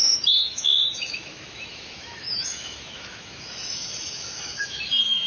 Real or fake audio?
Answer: fake